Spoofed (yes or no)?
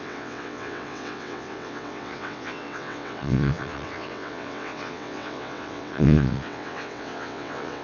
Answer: yes